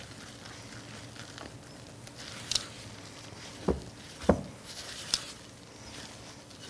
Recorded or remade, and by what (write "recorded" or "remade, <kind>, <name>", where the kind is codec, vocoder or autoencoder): recorded